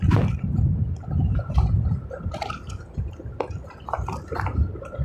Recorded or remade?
remade